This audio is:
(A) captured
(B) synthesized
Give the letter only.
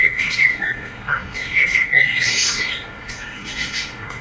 B